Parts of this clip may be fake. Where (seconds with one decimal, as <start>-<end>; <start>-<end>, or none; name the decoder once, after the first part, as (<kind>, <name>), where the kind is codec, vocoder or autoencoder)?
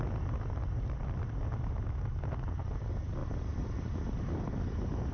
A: none